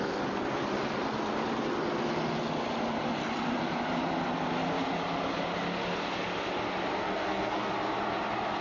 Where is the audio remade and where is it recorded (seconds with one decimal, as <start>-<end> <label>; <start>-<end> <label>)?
0.0-6.9 recorded; 6.9-7.7 remade; 7.7-8.6 recorded